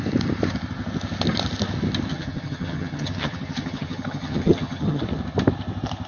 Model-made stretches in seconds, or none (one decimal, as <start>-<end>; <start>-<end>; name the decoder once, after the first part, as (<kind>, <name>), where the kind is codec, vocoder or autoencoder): 2.1-5.0 (vocoder, HiFi-GAN)